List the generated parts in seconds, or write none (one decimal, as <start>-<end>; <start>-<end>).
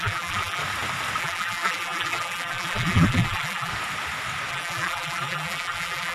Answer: 0.0-0.6; 1.2-3.7; 4.5-6.1